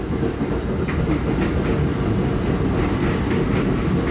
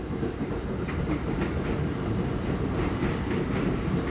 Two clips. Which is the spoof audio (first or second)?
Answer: second